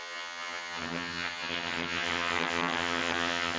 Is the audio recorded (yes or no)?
no